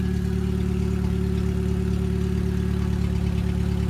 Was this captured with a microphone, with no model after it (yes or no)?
yes